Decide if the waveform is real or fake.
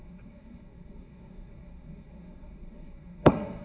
fake